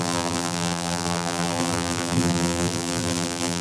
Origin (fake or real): fake